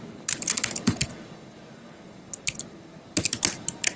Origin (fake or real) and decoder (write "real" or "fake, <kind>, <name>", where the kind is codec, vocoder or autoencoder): real